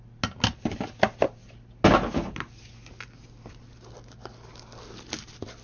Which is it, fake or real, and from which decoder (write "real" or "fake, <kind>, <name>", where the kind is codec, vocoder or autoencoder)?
real